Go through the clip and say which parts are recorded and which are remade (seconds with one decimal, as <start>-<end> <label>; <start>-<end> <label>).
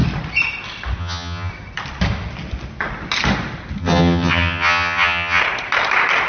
0.0-1.0 recorded; 1.0-1.5 remade; 1.5-3.8 recorded; 3.8-5.4 remade; 5.4-6.3 recorded